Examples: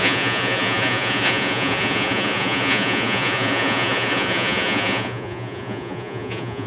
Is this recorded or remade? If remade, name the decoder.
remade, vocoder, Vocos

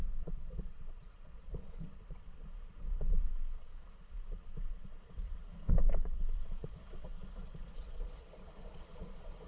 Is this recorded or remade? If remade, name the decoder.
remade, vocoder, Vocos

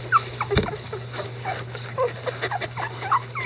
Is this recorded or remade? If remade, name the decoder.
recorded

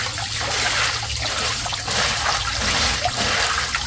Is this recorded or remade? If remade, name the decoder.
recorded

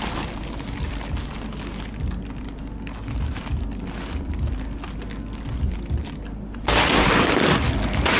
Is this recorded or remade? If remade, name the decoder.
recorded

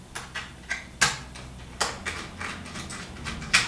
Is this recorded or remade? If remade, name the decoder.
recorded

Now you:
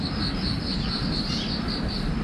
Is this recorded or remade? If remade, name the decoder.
recorded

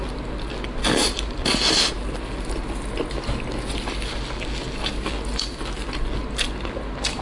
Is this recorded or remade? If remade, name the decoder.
recorded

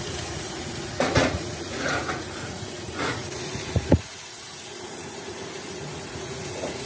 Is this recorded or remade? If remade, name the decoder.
remade, vocoder, Vocos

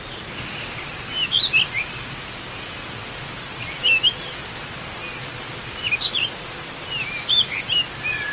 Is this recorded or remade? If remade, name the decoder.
recorded